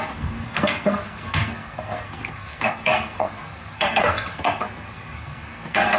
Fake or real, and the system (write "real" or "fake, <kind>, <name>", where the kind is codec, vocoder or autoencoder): fake, codec, SNAC